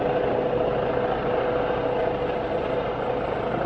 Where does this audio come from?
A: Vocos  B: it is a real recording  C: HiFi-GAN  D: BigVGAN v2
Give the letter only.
B